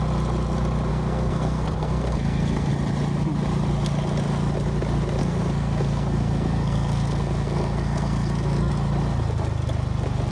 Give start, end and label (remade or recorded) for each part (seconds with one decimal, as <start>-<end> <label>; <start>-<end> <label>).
0.0-0.9 recorded; 0.9-2.7 remade; 2.7-5.2 recorded; 5.2-8.7 remade; 8.7-10.3 recorded